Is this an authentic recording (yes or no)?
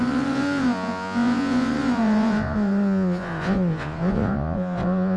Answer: no